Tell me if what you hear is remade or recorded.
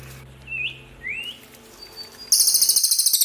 recorded